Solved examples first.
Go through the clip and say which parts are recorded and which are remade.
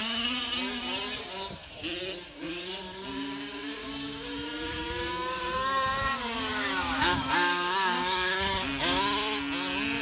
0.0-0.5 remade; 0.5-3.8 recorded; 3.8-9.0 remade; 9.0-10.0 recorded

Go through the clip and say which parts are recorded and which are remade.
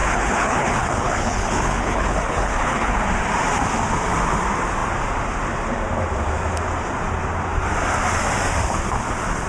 0.0-3.0 remade; 3.0-9.5 recorded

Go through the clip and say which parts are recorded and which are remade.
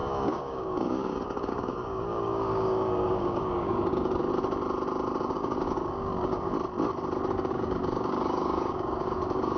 0.0-4.2 remade; 4.2-5.2 recorded; 5.2-6.5 remade; 6.5-7.3 recorded; 7.3-9.6 remade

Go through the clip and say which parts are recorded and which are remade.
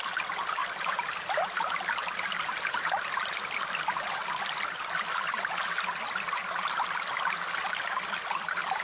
0.0-8.8 recorded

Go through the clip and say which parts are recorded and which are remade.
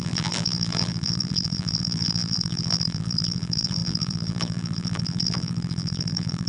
0.0-6.5 remade